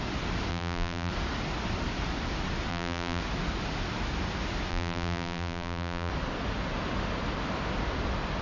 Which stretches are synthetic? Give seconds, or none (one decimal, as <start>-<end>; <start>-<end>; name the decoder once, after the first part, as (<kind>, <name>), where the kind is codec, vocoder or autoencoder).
0.5-1.1 (vocoder, BigVGAN v2); 2.7-3.2; 4.7-6.1